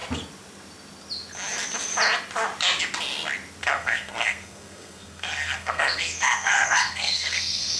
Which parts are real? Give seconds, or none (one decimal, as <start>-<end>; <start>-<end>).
0.0-3.6